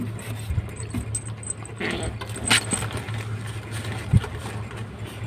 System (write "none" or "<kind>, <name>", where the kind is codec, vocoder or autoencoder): none